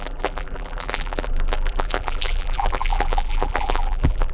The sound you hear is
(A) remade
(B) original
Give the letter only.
A